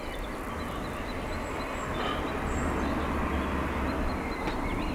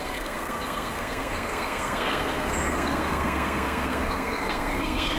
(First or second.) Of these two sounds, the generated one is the second